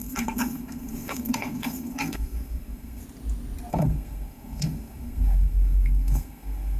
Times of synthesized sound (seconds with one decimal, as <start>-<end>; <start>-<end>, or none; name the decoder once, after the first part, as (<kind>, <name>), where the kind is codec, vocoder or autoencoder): 0.0-3.0 (codec, SNAC); 3.7-6.8